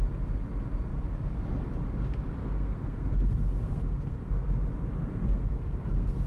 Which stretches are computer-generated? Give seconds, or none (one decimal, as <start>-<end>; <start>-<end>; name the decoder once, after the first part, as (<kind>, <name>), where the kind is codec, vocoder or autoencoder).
2.4-4.5 (codec, SNAC); 5.0-6.3